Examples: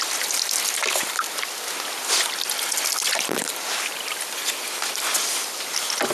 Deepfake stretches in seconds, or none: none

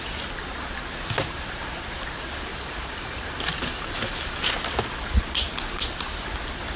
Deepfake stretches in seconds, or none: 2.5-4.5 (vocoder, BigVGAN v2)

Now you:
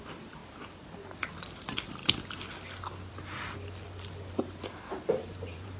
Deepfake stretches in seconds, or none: 4.9-5.8 (vocoder, BigVGAN v2)

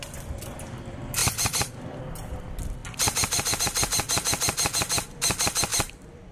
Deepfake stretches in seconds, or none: 0.0-6.3 (vocoder, BigVGAN v2)